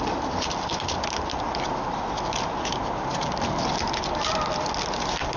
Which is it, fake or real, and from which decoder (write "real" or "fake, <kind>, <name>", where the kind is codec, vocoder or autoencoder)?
real